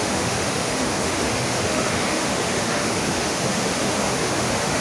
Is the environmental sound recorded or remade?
remade